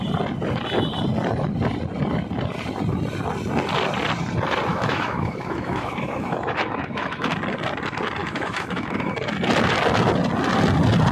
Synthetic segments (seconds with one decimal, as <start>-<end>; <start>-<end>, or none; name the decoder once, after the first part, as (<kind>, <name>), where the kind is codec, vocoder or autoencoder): 4.7-7.3 (autoencoder, DAC-VAE); 8.2-9.1